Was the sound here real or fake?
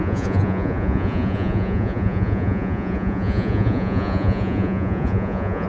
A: fake